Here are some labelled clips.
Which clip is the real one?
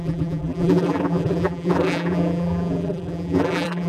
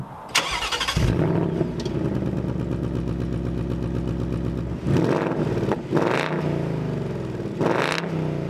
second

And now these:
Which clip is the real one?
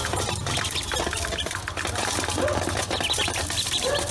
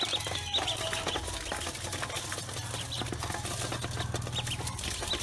second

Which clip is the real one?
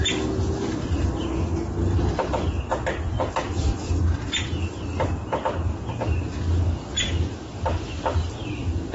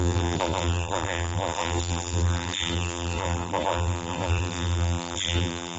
first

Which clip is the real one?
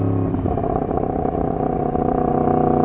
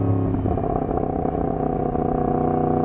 second